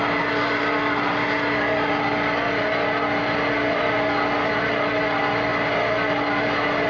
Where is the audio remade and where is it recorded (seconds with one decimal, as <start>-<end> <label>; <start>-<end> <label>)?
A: 0.0-6.9 recorded